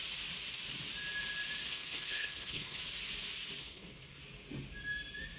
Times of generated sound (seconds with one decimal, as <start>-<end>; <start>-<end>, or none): 1.7-2.8; 3.6-4.2